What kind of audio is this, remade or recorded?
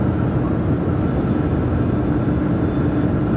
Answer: recorded